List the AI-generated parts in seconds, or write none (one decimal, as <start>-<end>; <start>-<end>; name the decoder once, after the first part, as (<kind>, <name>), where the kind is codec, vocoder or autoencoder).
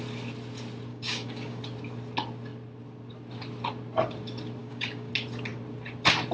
0.9-1.6 (codec, DAC); 4.6-5.1